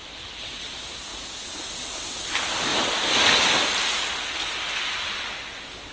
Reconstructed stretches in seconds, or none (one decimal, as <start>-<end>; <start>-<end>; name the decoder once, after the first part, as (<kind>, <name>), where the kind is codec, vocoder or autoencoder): none